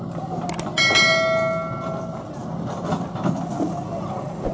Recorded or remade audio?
recorded